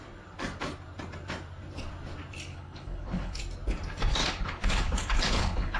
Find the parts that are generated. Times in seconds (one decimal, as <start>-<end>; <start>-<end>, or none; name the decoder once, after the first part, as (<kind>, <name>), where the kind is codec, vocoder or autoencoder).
2.5-3.4 (codec, HILCodec); 4.2-5.8